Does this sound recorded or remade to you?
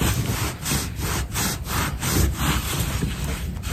remade